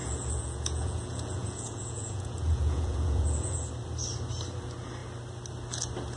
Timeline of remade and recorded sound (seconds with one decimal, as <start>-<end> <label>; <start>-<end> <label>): 0.0-3.7 remade; 3.7-6.2 recorded